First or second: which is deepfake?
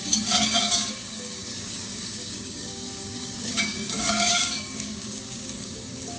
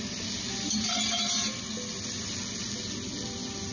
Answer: first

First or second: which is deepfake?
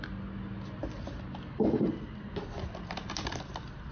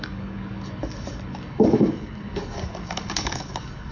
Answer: second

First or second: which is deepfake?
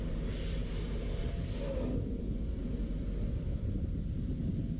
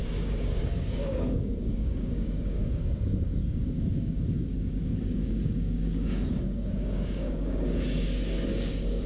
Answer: second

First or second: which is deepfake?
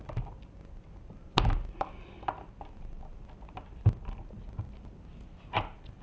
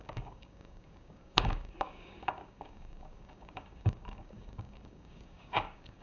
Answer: second